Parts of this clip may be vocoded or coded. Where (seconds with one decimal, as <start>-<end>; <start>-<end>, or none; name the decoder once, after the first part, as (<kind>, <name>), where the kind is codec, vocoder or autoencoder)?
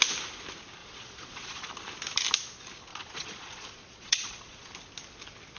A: 0.8-1.7 (vocoder, Vocos); 2.9-4.7